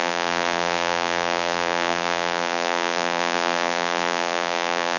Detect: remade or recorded remade